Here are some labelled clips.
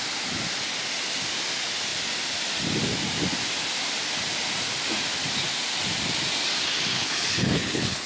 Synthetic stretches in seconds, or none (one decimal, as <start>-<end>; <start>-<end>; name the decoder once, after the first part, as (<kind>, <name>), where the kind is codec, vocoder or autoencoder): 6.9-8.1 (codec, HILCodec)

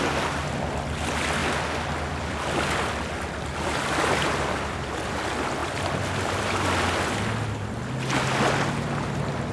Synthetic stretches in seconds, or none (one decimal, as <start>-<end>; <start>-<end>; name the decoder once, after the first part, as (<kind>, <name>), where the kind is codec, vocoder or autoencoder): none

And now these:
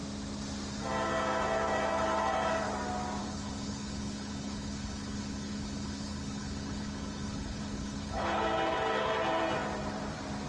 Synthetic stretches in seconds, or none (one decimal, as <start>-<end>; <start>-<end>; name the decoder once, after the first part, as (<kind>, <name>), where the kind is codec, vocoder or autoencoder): 3.2-8.4 (codec, HILCodec)

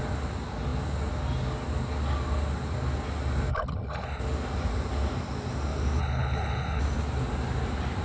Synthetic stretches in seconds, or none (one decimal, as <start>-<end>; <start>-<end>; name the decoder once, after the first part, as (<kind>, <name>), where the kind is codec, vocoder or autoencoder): 3.5-4.2 (codec, HILCodec); 6.0-6.8